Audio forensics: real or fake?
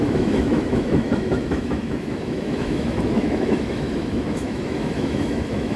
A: fake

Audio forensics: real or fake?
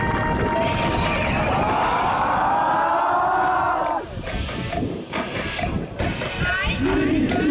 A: real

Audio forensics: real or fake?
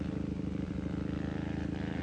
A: real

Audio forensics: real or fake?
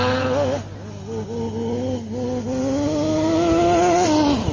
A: real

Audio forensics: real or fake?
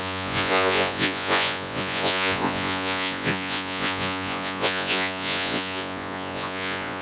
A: fake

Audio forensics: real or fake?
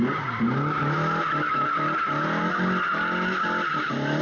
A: real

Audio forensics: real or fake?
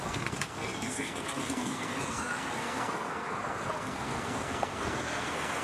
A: fake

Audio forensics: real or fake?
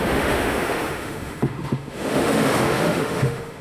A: fake